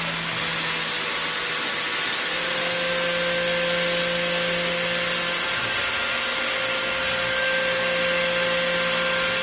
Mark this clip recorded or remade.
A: recorded